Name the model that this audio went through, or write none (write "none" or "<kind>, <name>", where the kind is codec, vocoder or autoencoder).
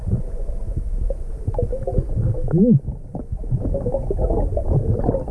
none